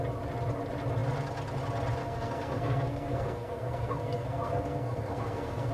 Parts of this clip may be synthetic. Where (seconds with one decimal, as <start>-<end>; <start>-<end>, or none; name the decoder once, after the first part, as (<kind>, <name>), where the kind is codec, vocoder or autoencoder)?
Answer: 2.0-5.7 (codec, SNAC)